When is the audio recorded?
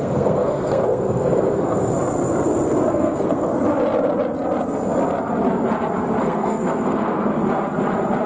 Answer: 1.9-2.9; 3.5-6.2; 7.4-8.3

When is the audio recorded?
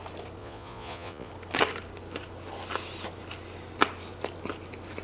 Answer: 0.0-0.4; 1.3-5.0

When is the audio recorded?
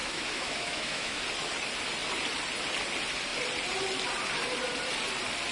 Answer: 1.2-5.5